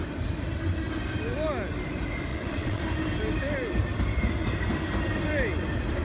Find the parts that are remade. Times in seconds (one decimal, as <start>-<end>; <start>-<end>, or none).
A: 2.3-2.8